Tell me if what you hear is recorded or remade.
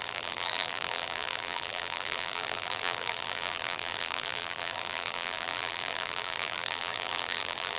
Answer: remade